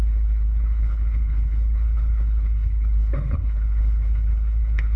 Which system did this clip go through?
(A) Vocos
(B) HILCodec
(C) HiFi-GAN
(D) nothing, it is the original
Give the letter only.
B